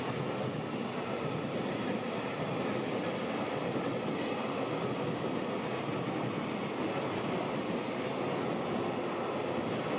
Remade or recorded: recorded